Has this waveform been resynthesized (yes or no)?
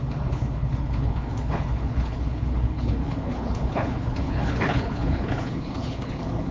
yes